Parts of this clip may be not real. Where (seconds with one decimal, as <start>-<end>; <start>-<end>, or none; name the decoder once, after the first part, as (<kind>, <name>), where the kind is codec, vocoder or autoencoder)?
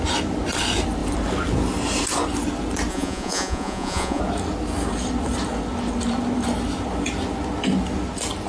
2.9-4.2 (vocoder, Vocos)